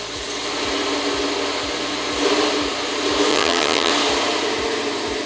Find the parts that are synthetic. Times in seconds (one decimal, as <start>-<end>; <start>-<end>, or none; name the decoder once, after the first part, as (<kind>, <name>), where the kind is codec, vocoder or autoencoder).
3.3-3.9 (vocoder, HiFi-GAN)